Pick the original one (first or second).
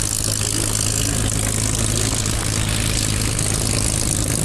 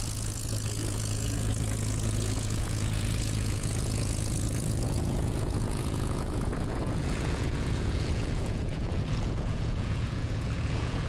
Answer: first